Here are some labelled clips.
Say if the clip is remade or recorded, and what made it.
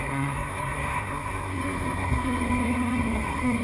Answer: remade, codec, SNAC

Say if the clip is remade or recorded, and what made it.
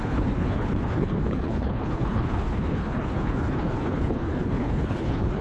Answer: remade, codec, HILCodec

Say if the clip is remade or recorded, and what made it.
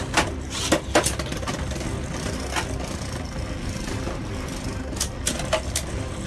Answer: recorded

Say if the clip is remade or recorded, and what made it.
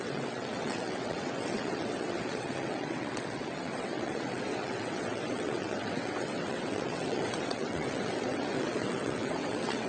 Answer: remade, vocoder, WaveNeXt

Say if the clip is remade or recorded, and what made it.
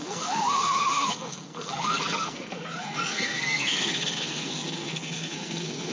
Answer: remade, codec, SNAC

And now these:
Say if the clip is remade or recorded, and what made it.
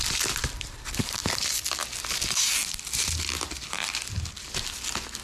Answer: recorded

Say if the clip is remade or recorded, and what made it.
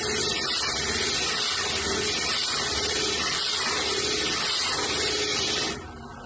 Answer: recorded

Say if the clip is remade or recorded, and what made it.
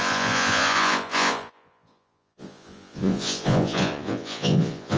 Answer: remade, vocoder, Vocos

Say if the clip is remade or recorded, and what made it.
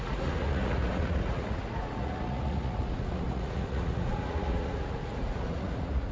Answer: remade, vocoder, Vocos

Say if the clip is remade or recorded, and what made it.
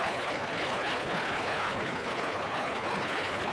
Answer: remade, codec, HILCodec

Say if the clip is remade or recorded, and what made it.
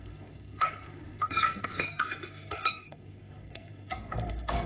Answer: remade, codec, SNAC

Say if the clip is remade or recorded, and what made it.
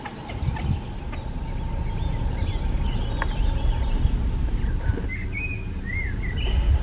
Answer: recorded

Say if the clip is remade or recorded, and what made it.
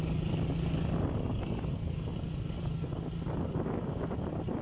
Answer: recorded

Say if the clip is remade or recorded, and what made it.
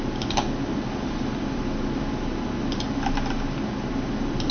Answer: recorded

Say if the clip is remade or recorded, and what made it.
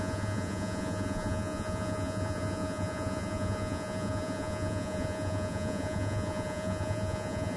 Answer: remade, vocoder, Vocos